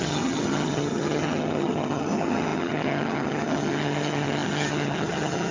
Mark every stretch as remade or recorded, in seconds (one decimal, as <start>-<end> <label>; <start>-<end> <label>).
0.0-5.5 remade